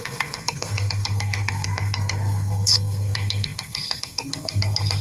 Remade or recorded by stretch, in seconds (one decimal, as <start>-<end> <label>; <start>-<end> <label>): 0.0-5.0 remade